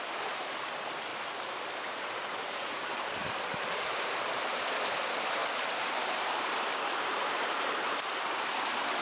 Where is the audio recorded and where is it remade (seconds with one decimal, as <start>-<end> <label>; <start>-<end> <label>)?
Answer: 0.0-1.1 remade; 1.1-1.7 recorded; 1.7-3.2 remade; 3.2-3.8 recorded; 3.8-9.0 remade